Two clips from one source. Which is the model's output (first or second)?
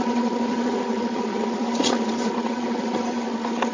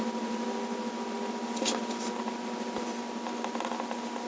first